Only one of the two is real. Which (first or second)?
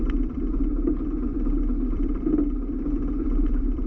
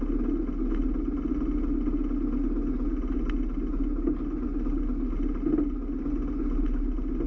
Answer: second